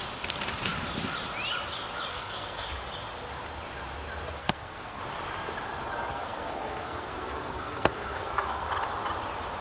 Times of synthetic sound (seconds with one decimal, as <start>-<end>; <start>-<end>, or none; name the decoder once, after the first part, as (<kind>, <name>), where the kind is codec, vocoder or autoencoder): 2.1-2.7 (codec, SNAC); 4.4-5.0; 6.1-8.7